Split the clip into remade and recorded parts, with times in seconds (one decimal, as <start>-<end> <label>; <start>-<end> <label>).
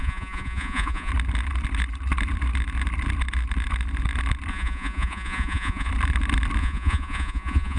0.0-1.1 remade; 1.1-4.5 recorded; 4.5-5.9 remade; 5.9-6.6 recorded; 6.6-7.8 remade